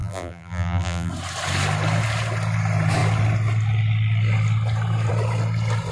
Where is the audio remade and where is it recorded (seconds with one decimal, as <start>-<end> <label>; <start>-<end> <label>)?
0.0-1.1 remade; 1.1-5.9 recorded